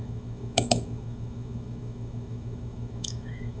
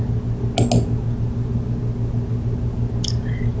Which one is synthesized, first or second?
first